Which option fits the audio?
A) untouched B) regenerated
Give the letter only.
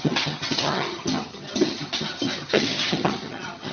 B